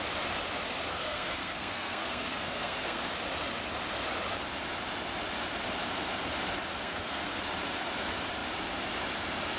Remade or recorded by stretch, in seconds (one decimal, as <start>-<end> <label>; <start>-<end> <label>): 0.0-0.9 recorded; 0.9-3.1 remade; 3.1-6.7 recorded; 6.7-7.4 remade; 7.4-9.6 recorded